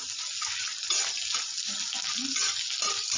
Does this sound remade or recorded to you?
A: recorded